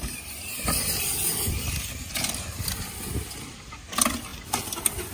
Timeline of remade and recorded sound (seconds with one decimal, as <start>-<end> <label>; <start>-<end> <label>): 0.0-5.1 remade